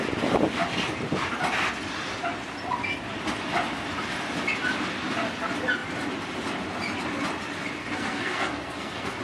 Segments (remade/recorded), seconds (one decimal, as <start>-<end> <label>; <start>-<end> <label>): 0.0-7.8 recorded; 7.8-9.2 remade